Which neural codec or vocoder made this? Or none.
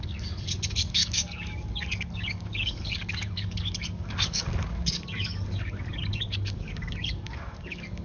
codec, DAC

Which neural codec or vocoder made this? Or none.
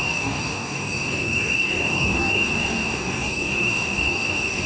codec, DAC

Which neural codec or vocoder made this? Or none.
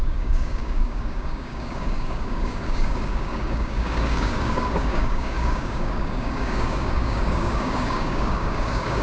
codec, DAC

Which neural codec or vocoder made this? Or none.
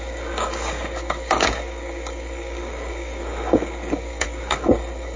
codec, DAC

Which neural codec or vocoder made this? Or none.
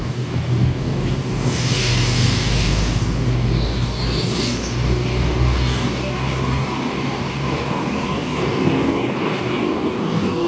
codec, DAC